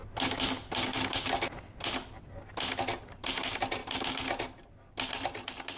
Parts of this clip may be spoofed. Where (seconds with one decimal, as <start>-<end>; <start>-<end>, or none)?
3.0-3.8; 5.1-5.8